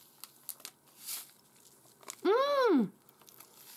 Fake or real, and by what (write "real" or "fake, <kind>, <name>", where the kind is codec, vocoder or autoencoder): real